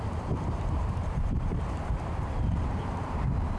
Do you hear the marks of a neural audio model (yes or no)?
yes